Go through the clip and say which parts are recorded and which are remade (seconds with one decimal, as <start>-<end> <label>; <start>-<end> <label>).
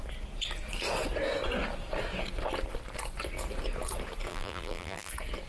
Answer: 0.0-4.3 recorded; 4.3-5.1 remade; 5.1-5.5 recorded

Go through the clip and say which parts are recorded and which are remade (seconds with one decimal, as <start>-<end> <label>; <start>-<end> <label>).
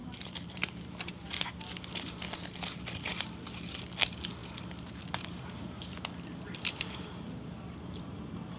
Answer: 0.0-1.1 remade; 1.1-8.6 recorded